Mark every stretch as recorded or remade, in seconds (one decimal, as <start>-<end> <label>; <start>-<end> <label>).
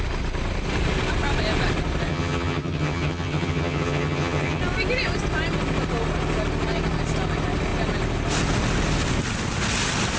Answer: 0.0-2.1 recorded; 2.1-4.6 remade; 4.6-10.2 recorded